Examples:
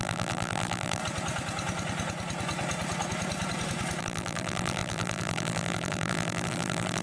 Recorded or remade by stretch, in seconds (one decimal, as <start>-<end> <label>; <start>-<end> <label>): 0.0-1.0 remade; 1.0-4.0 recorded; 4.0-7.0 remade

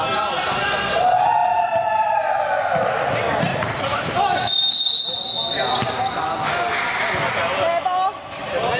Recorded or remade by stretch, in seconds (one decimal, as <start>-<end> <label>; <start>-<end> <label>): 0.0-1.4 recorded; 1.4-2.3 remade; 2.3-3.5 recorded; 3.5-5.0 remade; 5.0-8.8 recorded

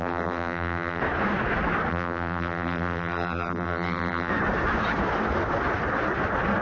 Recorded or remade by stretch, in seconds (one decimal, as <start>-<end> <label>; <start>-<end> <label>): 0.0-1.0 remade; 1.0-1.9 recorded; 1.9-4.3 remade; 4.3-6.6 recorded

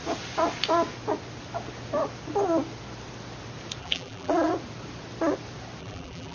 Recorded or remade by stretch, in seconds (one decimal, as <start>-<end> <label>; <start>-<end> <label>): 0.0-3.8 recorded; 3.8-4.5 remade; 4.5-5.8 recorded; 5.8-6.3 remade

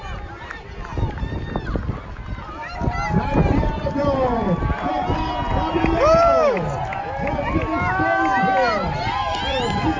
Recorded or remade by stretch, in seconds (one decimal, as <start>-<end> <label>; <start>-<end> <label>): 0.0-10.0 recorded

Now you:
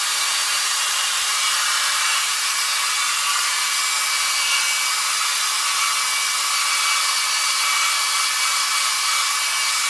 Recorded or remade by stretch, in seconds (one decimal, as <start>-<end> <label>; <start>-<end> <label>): 0.0-0.7 recorded; 0.7-2.6 remade; 2.6-9.9 recorded